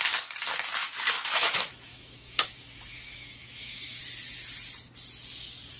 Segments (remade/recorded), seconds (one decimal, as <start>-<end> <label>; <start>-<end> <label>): 0.0-0.8 recorded; 0.8-4.0 remade; 4.0-5.8 recorded